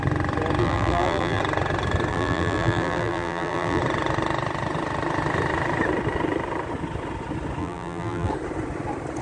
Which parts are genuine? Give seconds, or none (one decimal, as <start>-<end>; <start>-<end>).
0.0-0.6; 1.4-2.1; 3.8-7.6; 8.3-9.2